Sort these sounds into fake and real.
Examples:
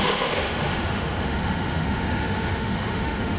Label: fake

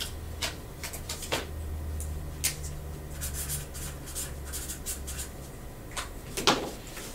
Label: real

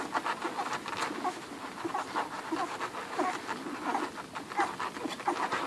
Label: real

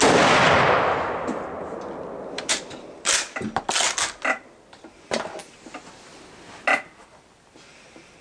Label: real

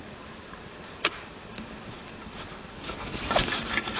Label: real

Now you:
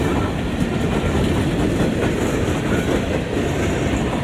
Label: real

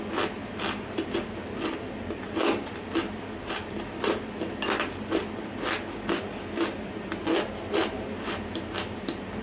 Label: real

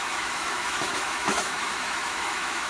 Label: fake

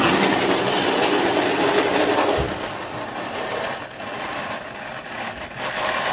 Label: real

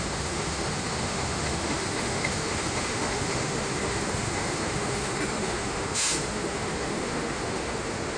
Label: fake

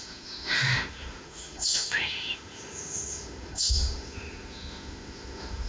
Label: fake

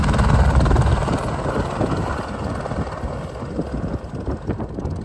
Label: real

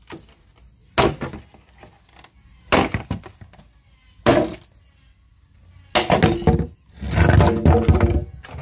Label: real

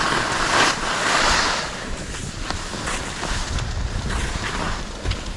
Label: real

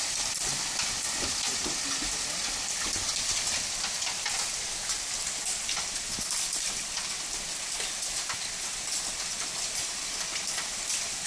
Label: real